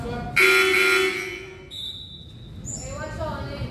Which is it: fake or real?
real